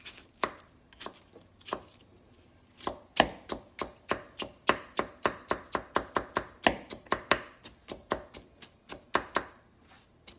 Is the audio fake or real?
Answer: real